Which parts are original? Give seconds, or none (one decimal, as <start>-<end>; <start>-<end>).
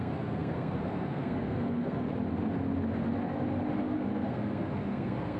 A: 2.1-3.8